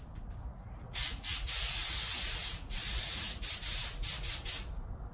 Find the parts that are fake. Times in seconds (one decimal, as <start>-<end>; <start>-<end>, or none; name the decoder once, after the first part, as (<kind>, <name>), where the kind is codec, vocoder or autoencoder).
0.4-3.5 (vocoder, Vocos)